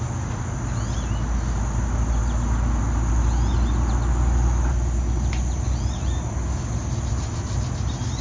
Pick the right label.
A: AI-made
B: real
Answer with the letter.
B